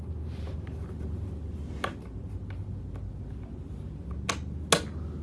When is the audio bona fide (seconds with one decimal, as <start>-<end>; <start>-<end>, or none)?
0.0-5.2